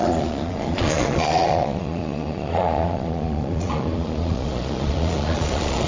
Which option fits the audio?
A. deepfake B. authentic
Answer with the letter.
A